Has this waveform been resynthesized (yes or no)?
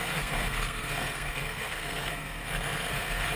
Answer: yes